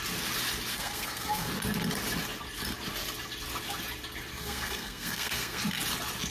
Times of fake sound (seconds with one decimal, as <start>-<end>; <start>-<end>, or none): 0.7-1.5; 4.3-5.6